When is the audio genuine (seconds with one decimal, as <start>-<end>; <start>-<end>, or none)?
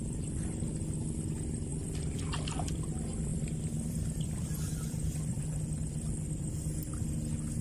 0.0-1.7; 2.2-3.3; 5.4-7.6